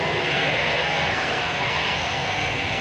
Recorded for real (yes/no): no